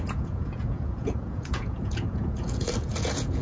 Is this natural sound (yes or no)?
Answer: no